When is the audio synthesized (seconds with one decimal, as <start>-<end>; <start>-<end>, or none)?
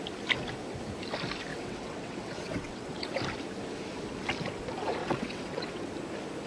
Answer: 1.5-3.2; 5.0-5.9